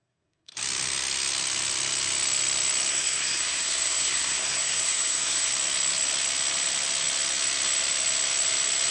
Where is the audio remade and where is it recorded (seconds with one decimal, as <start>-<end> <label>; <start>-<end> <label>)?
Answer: 0.0-0.5 remade; 0.5-2.9 recorded; 2.9-5.5 remade; 5.5-8.9 recorded